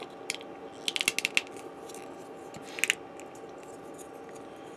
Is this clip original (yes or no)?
yes